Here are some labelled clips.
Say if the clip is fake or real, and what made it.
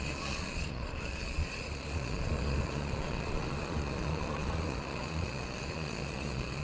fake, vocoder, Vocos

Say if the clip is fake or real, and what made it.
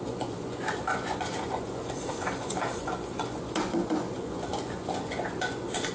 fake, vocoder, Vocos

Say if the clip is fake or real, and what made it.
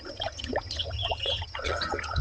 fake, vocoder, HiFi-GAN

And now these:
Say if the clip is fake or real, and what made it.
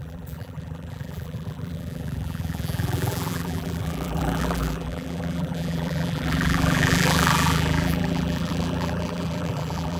fake, vocoder, BigVGAN v2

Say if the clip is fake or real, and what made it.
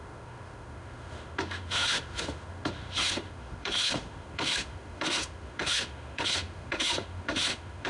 fake, autoencoder, DAC-VAE